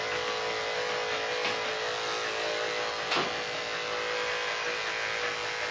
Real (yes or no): yes